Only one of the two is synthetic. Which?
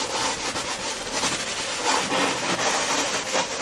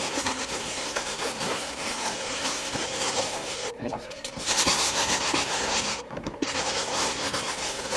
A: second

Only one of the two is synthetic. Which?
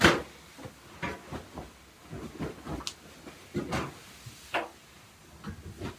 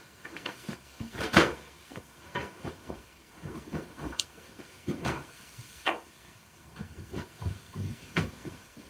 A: second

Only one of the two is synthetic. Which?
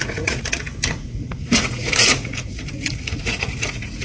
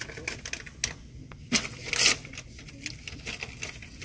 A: first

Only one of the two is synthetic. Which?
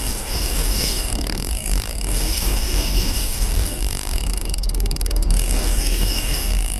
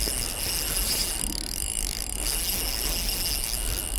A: first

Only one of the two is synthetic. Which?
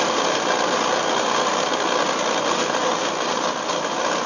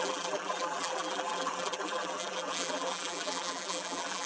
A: second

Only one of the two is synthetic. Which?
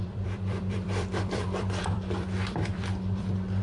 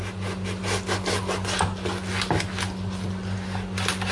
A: first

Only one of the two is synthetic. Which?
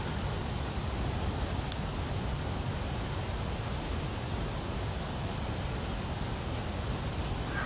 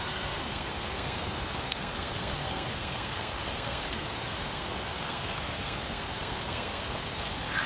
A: second